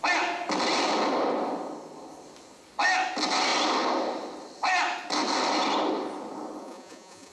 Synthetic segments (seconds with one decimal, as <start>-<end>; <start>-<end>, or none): 6.6-7.3